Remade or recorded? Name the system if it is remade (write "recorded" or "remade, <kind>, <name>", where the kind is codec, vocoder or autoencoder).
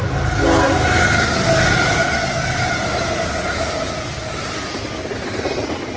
recorded